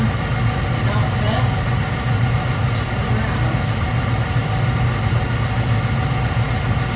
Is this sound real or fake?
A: real